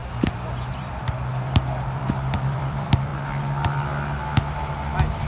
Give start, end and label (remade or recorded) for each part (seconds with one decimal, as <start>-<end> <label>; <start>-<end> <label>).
0.0-3.1 remade; 3.1-5.3 recorded